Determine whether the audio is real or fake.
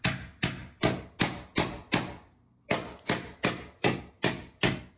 real